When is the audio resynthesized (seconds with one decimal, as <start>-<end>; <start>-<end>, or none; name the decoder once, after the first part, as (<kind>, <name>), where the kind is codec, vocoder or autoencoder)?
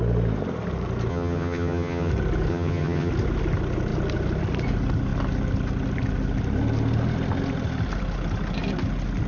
1.1-2.1 (vocoder, HiFi-GAN); 2.5-3.1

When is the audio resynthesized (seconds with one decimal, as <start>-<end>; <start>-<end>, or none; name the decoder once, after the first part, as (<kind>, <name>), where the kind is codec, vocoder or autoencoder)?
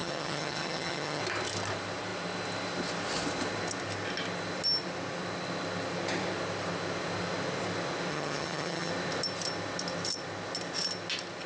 0.0-1.2 (vocoder, HiFi-GAN); 8.1-8.9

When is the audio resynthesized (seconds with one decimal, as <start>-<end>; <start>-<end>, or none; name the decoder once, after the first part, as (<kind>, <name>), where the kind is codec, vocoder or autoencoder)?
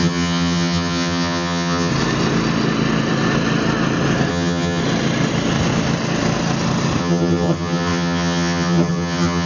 0.0-1.9 (vocoder, HiFi-GAN); 4.3-4.8; 7.0-9.5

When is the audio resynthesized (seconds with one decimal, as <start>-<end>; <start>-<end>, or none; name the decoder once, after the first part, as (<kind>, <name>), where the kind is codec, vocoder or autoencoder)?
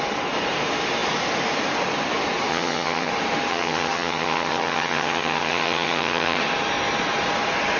2.5-3.1 (vocoder, HiFi-GAN); 3.5-6.4